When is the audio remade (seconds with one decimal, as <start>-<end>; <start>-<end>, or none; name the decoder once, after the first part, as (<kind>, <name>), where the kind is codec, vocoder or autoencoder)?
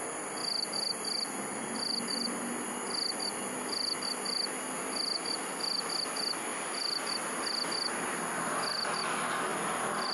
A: none